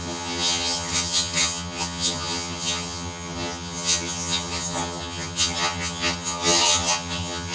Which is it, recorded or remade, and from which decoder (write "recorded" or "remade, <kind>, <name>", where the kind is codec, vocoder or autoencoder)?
remade, vocoder, HiFi-GAN